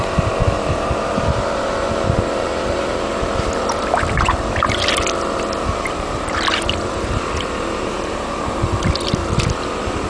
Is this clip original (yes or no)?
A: no